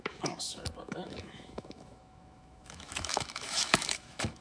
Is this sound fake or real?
fake